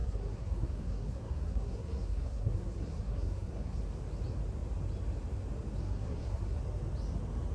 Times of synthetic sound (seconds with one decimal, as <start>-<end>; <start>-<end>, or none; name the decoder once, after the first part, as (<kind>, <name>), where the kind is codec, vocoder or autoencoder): 0.0-3.8 (codec, SNAC); 5.8-6.6